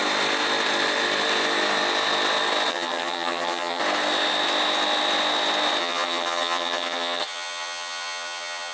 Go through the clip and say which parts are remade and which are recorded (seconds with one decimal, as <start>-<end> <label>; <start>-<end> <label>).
0.0-2.7 recorded; 2.7-3.8 remade; 3.8-5.8 recorded; 5.8-8.7 remade